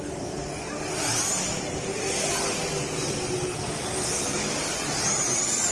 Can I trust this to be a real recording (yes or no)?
yes